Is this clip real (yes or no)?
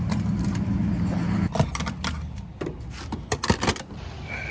yes